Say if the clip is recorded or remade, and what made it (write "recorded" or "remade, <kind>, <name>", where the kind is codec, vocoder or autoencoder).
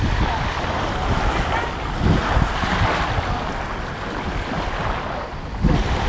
recorded